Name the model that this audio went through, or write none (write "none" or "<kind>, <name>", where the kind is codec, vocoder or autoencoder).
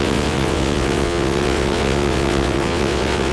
vocoder, WaveNeXt